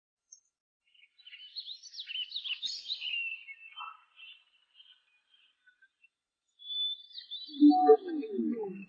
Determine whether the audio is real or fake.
real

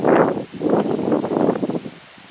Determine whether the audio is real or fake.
real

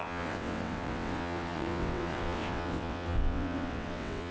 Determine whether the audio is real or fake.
fake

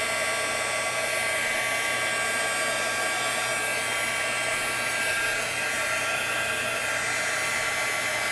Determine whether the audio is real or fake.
real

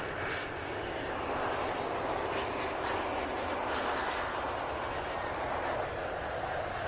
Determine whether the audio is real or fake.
real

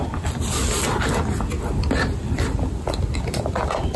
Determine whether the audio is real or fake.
real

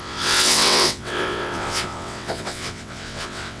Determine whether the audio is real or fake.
fake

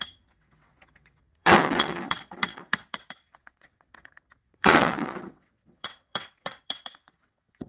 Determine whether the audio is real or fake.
fake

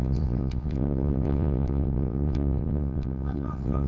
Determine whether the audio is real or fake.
fake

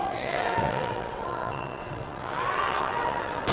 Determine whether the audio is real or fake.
fake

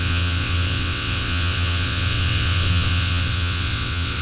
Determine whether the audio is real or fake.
fake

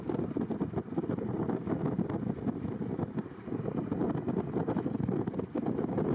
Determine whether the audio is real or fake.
real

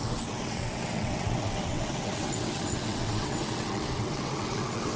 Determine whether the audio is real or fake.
fake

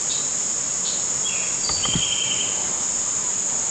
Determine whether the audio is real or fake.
real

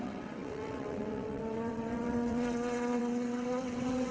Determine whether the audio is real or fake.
fake